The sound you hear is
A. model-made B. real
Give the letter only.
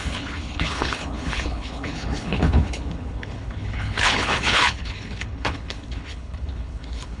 A